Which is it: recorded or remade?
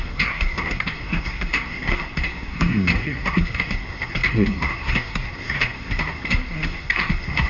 remade